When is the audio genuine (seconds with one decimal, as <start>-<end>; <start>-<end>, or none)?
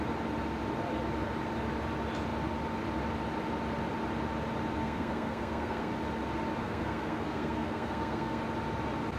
0.0-4.8; 5.9-6.6; 8.4-9.2